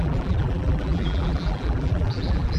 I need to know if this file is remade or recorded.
remade